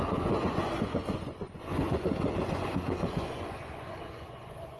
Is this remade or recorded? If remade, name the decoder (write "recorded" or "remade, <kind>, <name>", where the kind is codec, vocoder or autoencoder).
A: remade, vocoder, Vocos